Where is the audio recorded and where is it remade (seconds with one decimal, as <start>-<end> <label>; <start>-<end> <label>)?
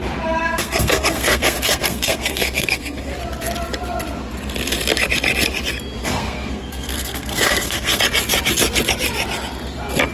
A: 0.0-0.6 recorded; 0.6-3.1 remade; 3.1-6.0 recorded; 6.0-8.0 remade; 8.0-10.1 recorded